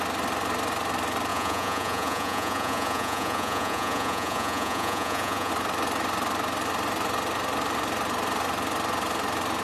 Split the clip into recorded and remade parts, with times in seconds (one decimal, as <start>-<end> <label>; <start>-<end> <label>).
0.0-1.3 recorded; 1.3-5.5 remade; 5.5-9.6 recorded